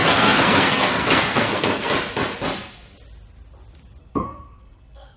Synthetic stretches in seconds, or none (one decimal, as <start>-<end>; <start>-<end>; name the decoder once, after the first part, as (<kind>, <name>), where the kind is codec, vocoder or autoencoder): 0.0-1.9 (codec, SNAC); 4.0-5.2